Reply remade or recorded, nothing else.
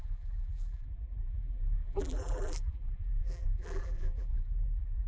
remade